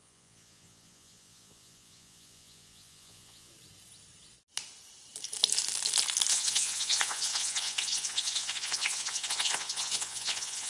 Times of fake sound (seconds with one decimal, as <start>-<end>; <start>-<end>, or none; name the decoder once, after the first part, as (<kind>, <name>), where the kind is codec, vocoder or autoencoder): 0.0-3.5 (vocoder, Vocos); 6.3-10.7